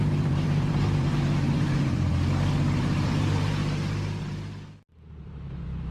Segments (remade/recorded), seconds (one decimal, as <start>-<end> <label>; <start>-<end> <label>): 0.0-2.1 remade; 2.1-2.8 recorded; 2.8-3.6 remade; 3.6-5.1 recorded; 5.1-5.9 remade